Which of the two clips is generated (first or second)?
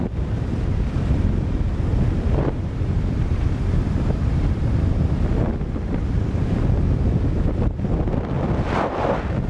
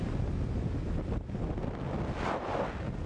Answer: first